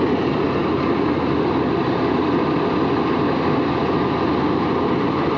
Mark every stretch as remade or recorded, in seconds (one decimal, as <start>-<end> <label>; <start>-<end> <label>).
0.0-5.4 recorded